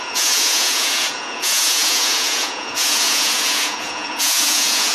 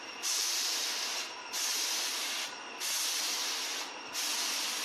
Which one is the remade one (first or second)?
first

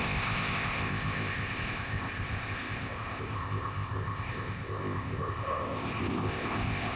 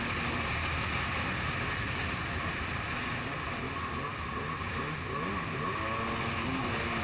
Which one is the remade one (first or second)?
first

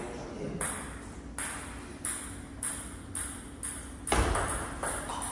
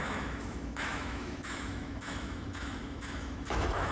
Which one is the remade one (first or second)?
second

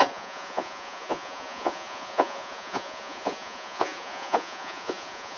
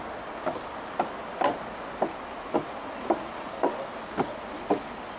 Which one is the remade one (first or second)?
first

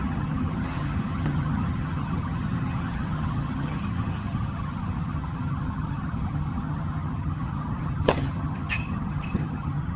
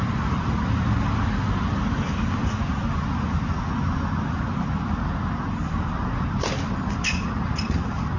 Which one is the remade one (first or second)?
first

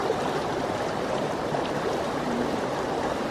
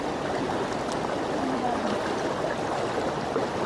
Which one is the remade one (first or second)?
first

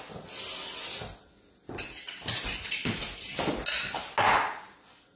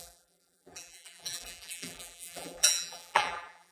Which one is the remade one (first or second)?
second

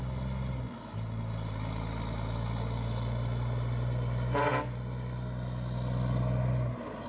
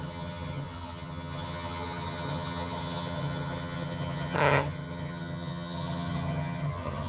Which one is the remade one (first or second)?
second